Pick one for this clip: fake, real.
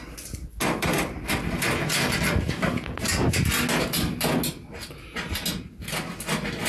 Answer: real